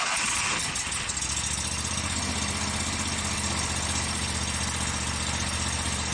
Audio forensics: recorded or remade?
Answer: recorded